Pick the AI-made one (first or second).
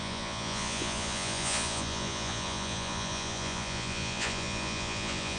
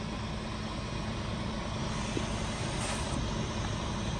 first